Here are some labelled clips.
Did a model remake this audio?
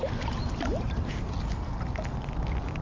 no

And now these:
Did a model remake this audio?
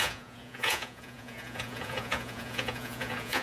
yes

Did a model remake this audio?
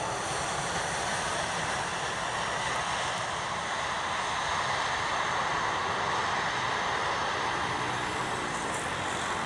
no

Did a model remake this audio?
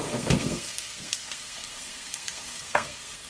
yes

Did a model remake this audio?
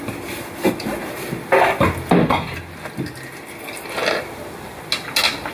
no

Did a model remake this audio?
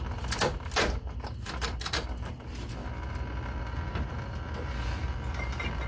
no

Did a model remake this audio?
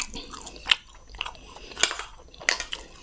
no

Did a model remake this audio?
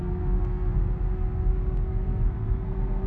yes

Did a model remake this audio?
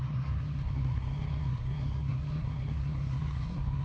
yes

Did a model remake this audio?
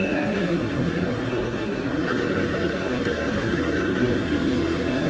yes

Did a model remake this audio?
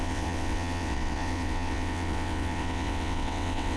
yes